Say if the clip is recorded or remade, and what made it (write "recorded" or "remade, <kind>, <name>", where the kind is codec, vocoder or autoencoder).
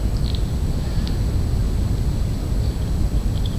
recorded